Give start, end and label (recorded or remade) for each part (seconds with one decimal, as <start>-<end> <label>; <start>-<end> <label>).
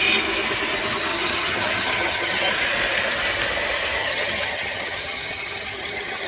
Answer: 0.0-1.1 recorded; 1.1-2.5 remade; 2.5-4.0 recorded; 4.0-6.3 remade